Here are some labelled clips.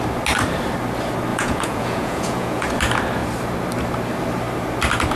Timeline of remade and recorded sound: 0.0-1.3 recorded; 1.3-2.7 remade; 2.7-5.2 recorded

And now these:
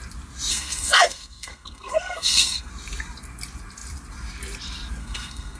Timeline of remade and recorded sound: 0.0-0.5 recorded; 0.5-2.7 remade; 2.7-5.0 recorded; 5.0-5.6 remade

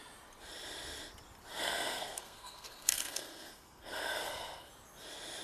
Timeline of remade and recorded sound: 0.0-1.5 recorded; 1.5-4.7 remade; 4.7-5.4 recorded

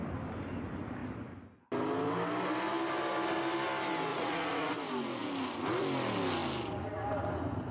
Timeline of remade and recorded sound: 0.0-4.1 recorded; 4.1-4.7 remade; 4.7-7.7 recorded

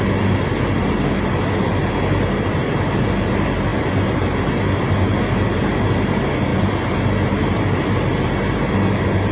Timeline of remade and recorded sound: 0.0-9.3 recorded

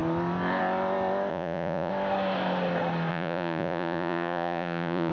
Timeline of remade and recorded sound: 0.0-1.3 recorded; 1.3-1.9 remade; 1.9-3.1 recorded; 3.1-5.1 remade

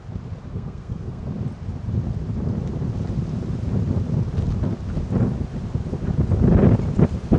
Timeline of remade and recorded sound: 0.0-0.5 recorded; 0.5-1.3 remade; 1.3-7.4 recorded